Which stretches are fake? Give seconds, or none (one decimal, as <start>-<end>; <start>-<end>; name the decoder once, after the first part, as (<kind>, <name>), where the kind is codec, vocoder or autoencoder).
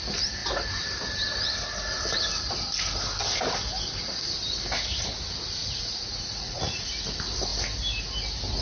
5.6-6.9 (vocoder, Vocos)